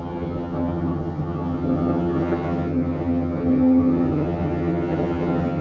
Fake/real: fake